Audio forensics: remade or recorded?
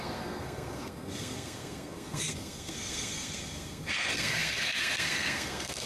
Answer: remade